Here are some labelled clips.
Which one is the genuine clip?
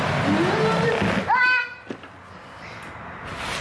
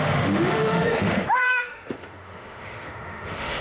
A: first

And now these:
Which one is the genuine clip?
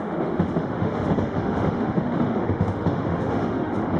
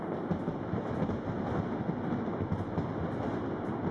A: second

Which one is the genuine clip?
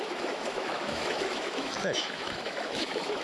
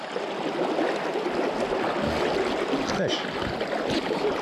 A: second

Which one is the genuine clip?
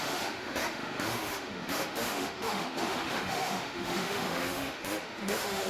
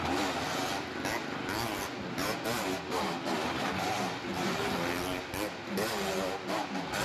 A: second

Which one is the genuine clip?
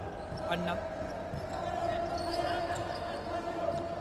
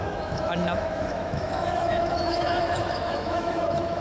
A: first